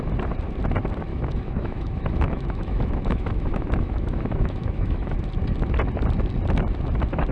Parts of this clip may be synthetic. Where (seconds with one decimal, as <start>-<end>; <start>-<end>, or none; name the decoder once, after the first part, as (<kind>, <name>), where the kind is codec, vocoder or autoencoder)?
1.1-5.2 (autoencoder, DAC-VAE)